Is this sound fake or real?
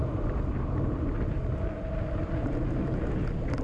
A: real